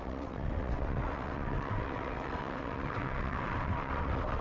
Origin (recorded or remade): remade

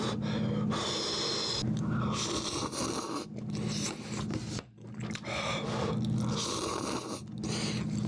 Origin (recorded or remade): recorded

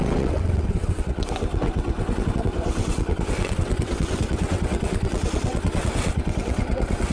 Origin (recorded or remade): remade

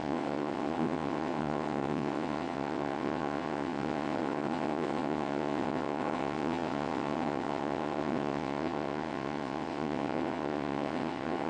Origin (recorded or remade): remade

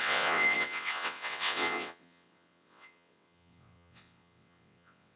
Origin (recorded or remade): remade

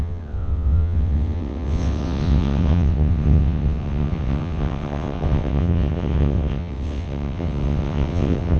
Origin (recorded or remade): remade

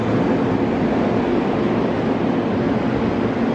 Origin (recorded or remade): recorded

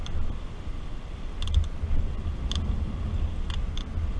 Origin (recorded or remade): recorded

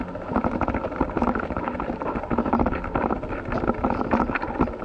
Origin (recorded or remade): recorded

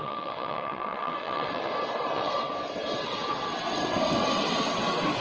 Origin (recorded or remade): remade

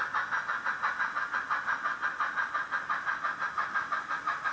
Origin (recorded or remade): recorded